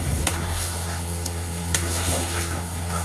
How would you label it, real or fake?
fake